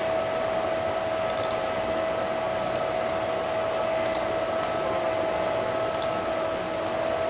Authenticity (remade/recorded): recorded